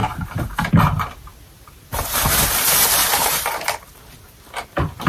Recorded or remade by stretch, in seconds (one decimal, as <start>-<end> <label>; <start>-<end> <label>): 0.0-0.7 remade; 0.7-1.3 recorded; 1.3-4.4 remade; 4.4-5.1 recorded